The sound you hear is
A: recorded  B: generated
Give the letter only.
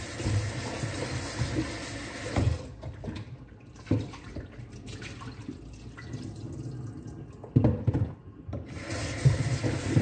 A